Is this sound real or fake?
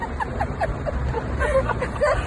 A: fake